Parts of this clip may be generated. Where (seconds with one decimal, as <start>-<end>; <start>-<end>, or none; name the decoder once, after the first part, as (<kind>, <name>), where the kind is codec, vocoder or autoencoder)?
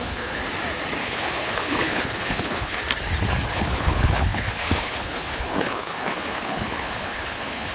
0.0-0.4 (codec, HILCodec); 1.0-2.8; 3.5-7.7